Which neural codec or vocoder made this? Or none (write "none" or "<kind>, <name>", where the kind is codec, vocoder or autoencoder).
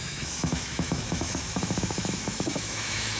autoencoder, DAC-VAE